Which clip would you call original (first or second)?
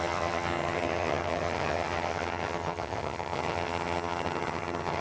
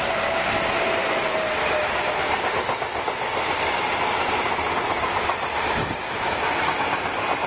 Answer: second